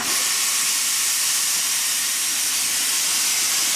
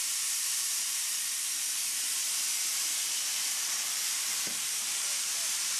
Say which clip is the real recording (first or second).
first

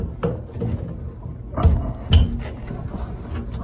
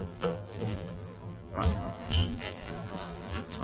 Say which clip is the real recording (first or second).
first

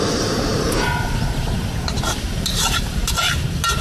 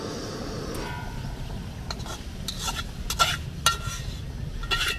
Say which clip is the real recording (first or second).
second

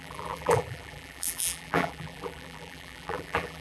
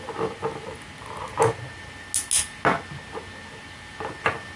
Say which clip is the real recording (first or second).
second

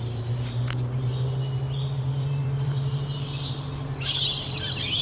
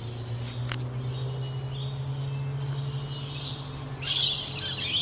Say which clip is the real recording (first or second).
second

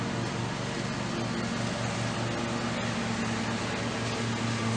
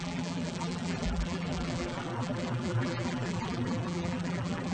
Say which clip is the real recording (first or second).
first